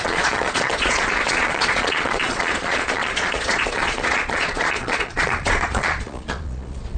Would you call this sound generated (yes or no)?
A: yes